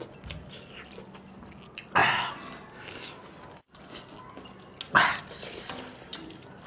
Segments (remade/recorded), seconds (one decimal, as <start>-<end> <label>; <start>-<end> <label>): 0.0-6.7 recorded